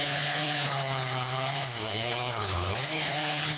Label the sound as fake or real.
fake